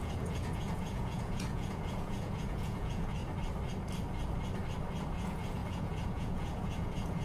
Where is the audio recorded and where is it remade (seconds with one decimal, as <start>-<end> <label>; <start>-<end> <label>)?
0.0-3.2 remade; 3.2-5.1 recorded; 5.1-7.2 remade